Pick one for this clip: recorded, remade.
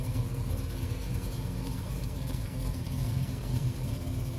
remade